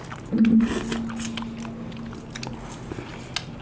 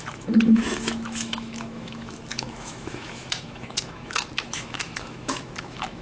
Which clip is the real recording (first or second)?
first